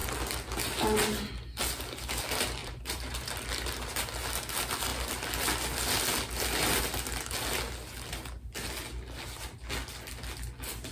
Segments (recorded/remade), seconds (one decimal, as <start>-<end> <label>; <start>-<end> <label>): 0.0-2.6 recorded; 2.6-3.3 remade; 3.3-10.9 recorded